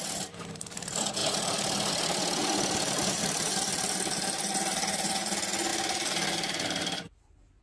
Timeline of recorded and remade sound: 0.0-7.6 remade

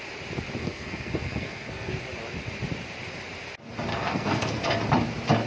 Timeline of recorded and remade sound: 0.0-0.6 recorded; 0.6-1.9 remade; 1.9-3.9 recorded; 3.9-4.6 remade; 4.6-5.5 recorded

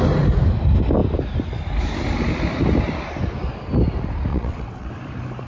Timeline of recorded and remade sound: 0.0-4.3 recorded; 4.3-4.9 remade; 4.9-5.5 recorded

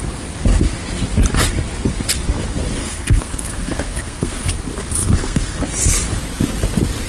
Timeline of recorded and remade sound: 0.0-2.8 recorded; 2.8-4.5 remade; 4.5-5.0 recorded; 5.0-5.6 remade; 5.6-7.1 recorded